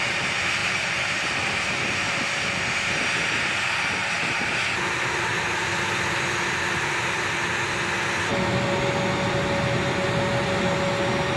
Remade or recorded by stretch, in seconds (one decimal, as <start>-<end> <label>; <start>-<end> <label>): 0.0-0.6 recorded; 0.6-1.1 remade; 1.1-4.0 recorded; 4.0-4.6 remade; 4.6-11.4 recorded